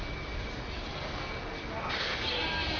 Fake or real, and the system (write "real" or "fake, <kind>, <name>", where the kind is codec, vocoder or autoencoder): real